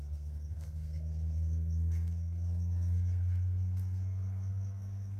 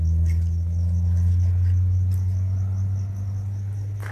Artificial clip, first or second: first